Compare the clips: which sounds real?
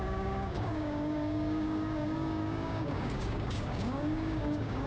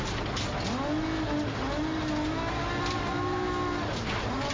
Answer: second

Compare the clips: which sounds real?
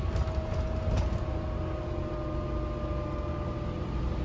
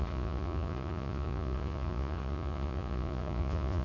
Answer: first